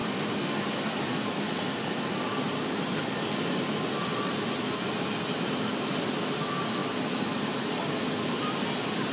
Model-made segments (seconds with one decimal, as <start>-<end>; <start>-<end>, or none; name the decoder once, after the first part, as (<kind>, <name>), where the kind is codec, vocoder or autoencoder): none